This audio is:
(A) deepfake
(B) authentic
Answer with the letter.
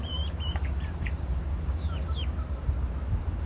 A